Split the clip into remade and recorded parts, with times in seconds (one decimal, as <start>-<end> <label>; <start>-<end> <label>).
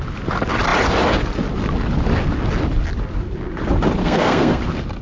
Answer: 0.0-4.0 recorded; 4.0-4.6 remade; 4.6-5.0 recorded